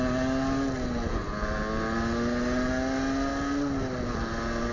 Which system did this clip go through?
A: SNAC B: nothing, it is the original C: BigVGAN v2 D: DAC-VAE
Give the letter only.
B